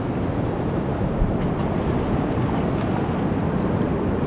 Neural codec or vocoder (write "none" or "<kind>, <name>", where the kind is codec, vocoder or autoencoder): none